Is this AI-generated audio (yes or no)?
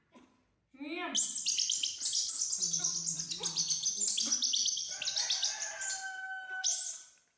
no